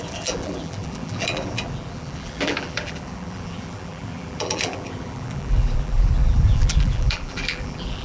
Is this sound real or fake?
fake